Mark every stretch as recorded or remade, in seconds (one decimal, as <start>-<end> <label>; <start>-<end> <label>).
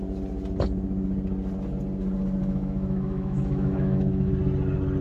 0.0-2.4 recorded; 2.4-4.3 remade; 4.3-5.0 recorded